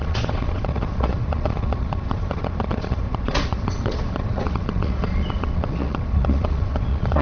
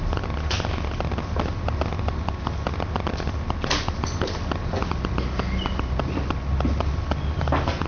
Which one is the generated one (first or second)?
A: first